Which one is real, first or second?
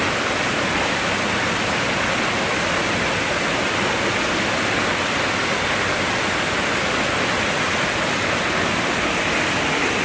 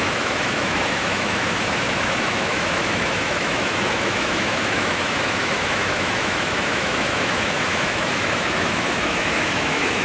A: first